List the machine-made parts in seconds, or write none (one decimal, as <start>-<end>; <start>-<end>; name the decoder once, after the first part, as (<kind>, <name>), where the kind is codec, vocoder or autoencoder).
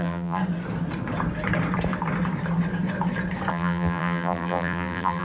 0.0-0.4 (vocoder, BigVGAN v2); 3.5-5.2